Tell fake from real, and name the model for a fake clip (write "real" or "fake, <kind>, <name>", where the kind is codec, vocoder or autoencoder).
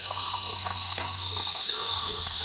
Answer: fake, codec, SNAC